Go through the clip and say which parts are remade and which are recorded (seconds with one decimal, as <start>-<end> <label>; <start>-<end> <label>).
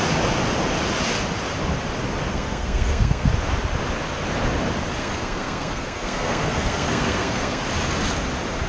0.0-2.3 recorded; 2.3-3.3 remade; 3.3-5.0 recorded; 5.0-7.6 remade; 7.6-8.7 recorded